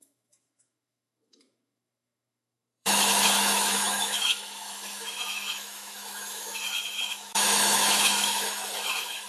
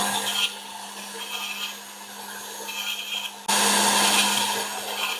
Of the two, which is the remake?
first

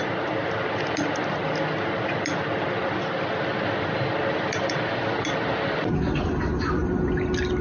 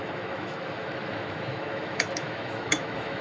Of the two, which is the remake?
second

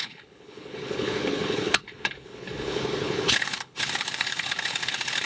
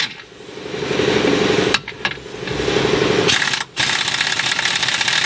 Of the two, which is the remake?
first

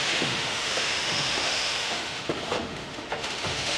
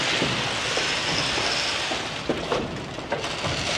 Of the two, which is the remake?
first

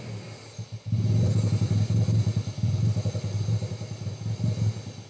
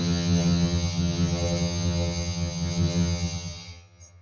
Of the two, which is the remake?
second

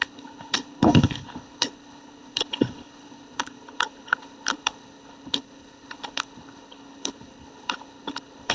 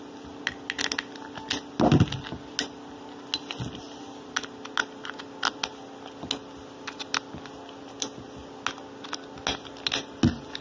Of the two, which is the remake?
first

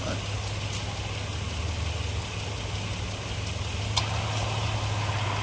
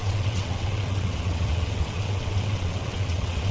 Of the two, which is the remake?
second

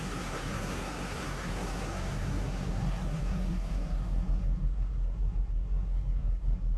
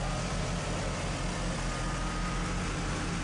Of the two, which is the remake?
first